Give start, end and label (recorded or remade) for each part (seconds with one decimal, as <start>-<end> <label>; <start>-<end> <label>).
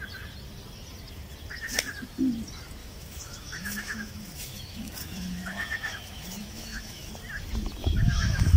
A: 0.0-2.8 recorded; 2.8-7.1 remade; 7.1-7.8 recorded; 7.8-8.6 remade